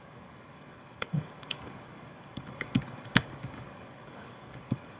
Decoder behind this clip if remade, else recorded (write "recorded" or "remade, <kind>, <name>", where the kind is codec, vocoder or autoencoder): remade, codec, DAC